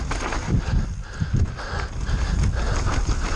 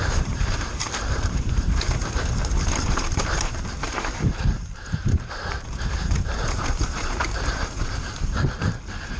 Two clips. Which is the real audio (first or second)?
first